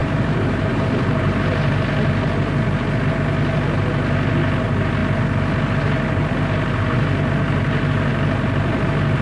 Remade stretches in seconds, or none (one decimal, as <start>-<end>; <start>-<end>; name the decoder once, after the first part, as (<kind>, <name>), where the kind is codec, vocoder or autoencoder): 0.0-1.5 (vocoder, BigVGAN v2)